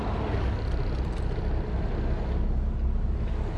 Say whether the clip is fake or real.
real